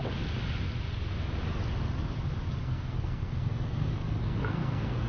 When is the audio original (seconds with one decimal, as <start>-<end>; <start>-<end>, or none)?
0.0-2.6